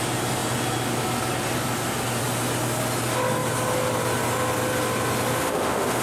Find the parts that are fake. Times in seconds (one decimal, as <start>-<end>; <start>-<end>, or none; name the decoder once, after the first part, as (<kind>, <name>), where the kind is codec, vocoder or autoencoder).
5.4-6.0 (autoencoder, DAC-VAE)